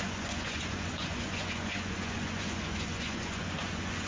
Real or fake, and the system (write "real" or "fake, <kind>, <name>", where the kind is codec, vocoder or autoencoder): fake, vocoder, Vocos